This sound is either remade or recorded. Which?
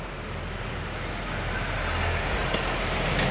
recorded